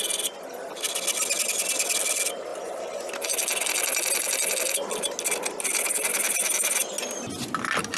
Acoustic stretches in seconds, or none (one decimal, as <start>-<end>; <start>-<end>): 0.0-2.5; 3.1-8.0